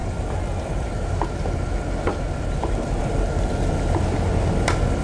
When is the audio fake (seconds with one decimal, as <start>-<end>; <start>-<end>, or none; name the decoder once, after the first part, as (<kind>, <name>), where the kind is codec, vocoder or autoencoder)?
none

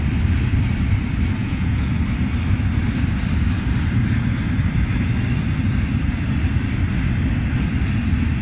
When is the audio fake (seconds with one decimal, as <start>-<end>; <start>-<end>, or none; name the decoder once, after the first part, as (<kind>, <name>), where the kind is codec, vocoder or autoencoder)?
1.4-1.9 (vocoder, Vocos)

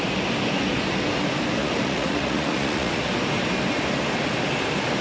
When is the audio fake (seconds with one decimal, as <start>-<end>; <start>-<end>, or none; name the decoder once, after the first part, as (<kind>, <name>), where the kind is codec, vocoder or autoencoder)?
1.6-3.0 (vocoder, Vocos)

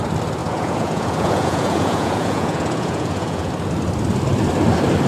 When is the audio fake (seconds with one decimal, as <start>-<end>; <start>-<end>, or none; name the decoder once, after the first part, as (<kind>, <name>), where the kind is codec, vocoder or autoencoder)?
0.4-3.5 (vocoder, Vocos)

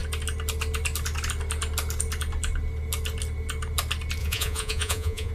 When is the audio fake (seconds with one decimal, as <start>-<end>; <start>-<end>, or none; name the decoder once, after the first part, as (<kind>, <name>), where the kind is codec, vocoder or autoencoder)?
4.2-5.3 (vocoder, Vocos)

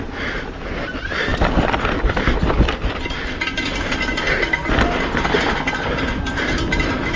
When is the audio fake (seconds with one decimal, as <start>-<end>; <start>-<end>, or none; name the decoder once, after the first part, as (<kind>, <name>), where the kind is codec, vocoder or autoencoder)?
none

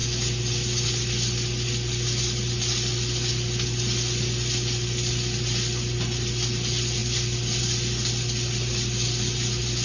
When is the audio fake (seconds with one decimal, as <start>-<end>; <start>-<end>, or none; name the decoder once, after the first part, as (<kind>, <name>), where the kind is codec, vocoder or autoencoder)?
none